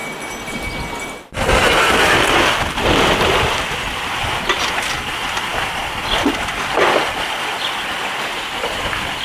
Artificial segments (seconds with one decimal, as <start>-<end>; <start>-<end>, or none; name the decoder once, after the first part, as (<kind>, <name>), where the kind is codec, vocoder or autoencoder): none